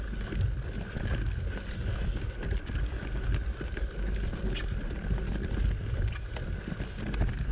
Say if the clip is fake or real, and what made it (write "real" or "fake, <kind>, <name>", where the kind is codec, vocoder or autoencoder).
real